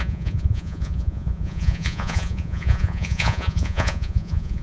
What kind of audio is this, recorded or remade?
remade